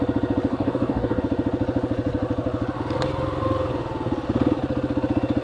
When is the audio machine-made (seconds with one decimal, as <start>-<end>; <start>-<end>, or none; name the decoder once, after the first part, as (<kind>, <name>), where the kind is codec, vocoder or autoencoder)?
0.5-1.2 (codec, DAC)